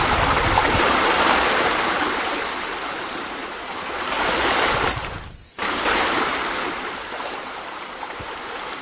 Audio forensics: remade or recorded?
remade